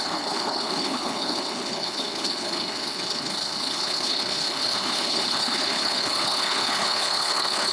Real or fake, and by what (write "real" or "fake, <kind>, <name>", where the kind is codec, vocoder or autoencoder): fake, codec, HILCodec